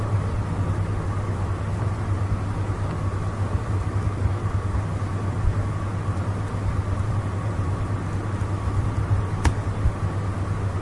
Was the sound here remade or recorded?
recorded